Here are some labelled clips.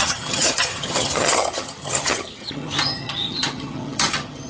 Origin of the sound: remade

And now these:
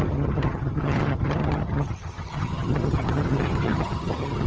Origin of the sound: remade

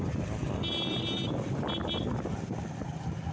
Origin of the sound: recorded